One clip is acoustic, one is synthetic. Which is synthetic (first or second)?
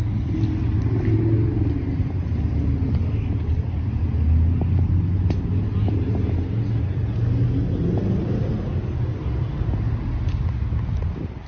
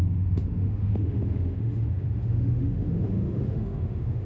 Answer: second